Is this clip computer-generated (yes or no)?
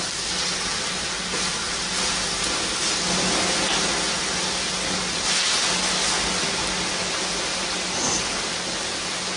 no